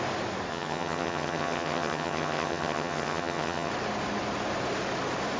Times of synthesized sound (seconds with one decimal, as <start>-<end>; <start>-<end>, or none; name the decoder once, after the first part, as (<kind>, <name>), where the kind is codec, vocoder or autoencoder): 0.5-3.7 (vocoder, HiFi-GAN)